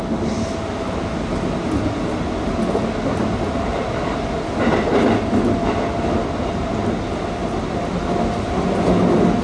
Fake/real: real